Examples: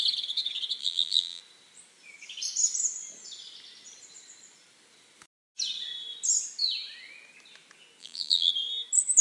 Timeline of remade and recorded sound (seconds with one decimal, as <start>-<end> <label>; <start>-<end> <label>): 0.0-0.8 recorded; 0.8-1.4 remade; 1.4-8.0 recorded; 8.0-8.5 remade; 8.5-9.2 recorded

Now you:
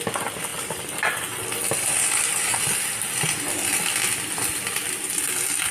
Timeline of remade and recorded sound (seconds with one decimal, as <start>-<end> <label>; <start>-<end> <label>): 0.0-5.7 recorded

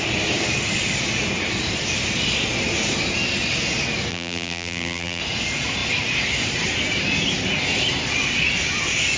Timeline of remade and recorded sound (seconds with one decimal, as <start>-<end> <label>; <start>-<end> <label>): 0.0-4.1 recorded; 4.1-5.2 remade; 5.2-9.2 recorded

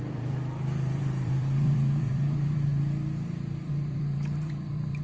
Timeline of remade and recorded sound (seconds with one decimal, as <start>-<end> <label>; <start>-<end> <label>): 0.0-2.7 remade; 2.7-3.7 recorded; 3.7-5.0 remade

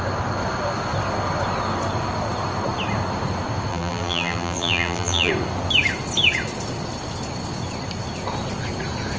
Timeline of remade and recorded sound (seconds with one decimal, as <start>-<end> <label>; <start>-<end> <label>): 0.0-3.7 recorded; 3.7-5.3 remade; 5.3-9.2 recorded